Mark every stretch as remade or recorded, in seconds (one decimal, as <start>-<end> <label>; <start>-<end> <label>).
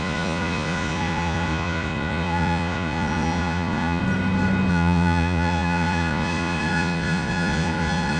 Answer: 0.0-4.0 remade; 4.0-4.7 recorded; 4.7-8.2 remade